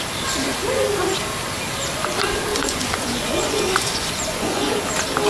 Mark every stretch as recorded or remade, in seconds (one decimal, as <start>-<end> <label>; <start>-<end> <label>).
0.0-2.5 recorded; 2.5-4.7 remade; 4.7-5.3 recorded